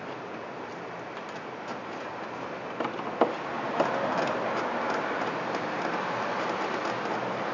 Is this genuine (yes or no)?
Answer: yes